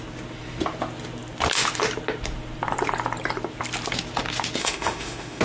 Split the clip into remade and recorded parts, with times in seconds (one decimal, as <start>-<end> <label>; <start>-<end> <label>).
0.0-4.6 recorded; 4.6-5.4 remade